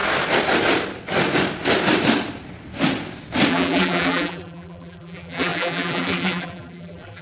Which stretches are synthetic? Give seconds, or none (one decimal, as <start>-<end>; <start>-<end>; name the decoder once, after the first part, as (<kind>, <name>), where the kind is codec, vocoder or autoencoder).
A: 3.5-7.2 (vocoder, BigVGAN v2)